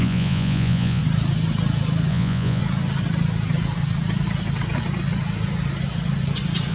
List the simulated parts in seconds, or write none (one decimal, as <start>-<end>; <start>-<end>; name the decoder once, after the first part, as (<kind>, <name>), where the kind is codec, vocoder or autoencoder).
0.0-1.0 (vocoder, Vocos); 2.1-2.6